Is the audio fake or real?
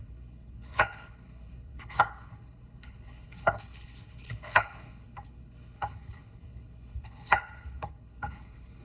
fake